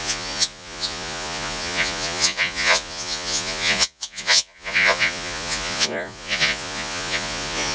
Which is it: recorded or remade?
remade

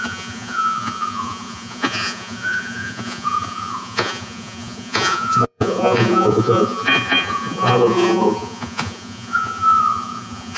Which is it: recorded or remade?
remade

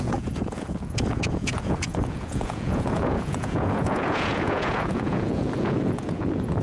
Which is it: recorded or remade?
remade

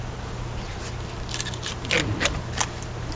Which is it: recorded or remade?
recorded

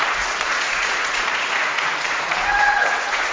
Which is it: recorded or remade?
remade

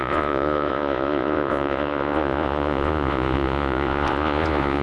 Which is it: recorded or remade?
remade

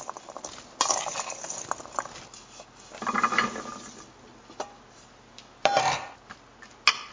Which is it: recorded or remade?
recorded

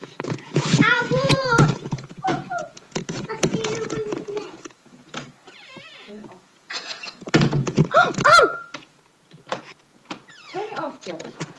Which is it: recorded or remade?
remade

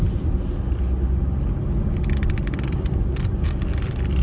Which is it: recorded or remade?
recorded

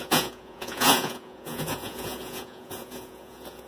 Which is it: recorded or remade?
remade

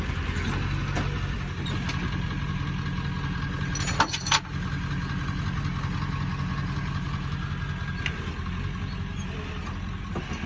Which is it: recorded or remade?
recorded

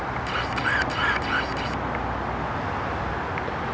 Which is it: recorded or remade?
recorded